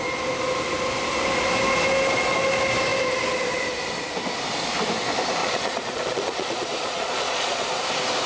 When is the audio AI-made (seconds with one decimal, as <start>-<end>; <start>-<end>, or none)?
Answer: 5.4-7.6